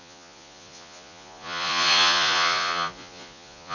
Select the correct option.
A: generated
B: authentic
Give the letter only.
A